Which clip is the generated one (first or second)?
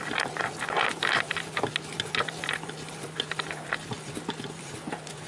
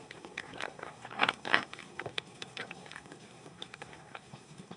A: second